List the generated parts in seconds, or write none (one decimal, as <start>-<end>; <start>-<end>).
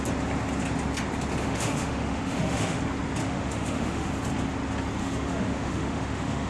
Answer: 1.4-2.8; 3.2-4.1; 5.0-6.5